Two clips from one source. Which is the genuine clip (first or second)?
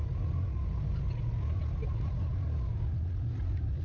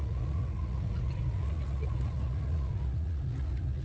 first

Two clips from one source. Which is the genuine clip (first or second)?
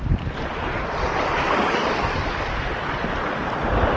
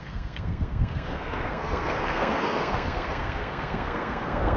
first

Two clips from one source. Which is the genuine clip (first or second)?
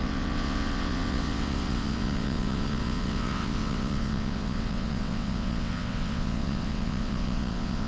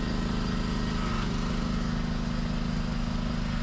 second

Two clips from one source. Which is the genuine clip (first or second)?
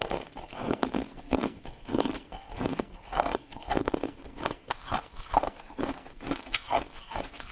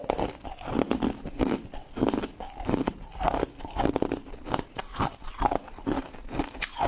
second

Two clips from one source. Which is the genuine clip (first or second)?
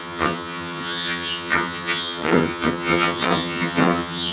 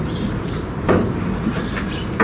second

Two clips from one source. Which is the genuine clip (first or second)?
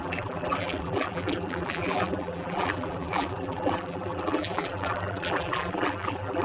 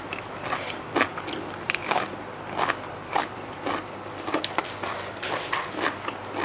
second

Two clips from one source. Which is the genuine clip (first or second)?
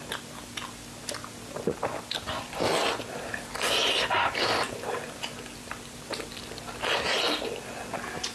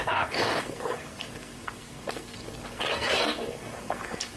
first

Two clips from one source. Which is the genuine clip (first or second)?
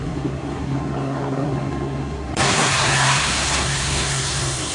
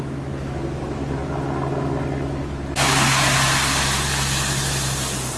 second